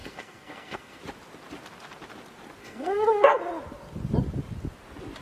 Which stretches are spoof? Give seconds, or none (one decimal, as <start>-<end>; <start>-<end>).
0.0-1.0; 2.6-3.4